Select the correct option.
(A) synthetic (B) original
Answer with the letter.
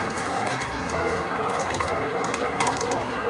A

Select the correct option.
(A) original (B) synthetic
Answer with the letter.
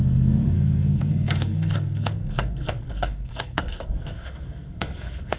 B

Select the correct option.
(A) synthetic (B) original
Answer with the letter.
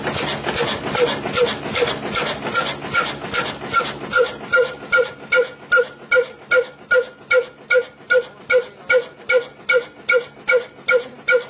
B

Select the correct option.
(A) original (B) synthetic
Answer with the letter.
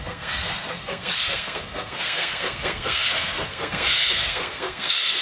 B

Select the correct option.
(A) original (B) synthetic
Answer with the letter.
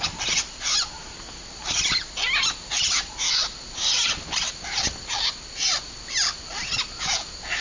A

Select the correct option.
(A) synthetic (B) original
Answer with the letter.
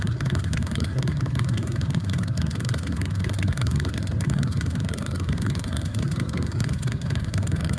A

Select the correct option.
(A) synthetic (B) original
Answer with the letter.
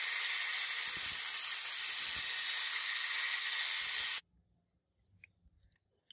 B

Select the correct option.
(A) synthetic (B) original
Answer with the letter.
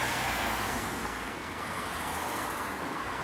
A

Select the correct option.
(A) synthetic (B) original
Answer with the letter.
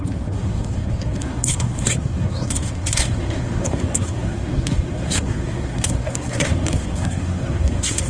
A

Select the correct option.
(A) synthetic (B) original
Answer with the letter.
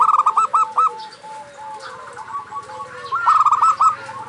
B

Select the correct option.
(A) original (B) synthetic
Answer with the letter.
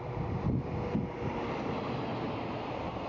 A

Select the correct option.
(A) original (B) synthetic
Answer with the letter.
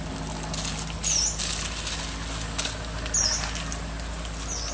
A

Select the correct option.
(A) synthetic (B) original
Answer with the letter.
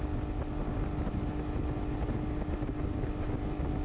B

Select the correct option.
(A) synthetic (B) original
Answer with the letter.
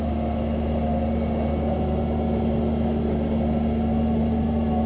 B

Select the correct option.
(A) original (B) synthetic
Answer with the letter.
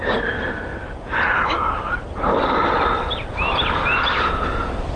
A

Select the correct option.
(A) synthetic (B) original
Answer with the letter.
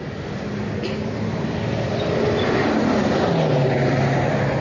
B